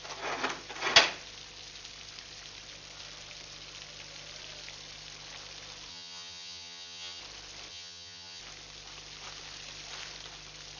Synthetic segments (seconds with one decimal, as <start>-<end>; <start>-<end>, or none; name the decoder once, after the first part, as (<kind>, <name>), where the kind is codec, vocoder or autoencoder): 5.9-7.2 (vocoder, HiFi-GAN); 7.7-8.4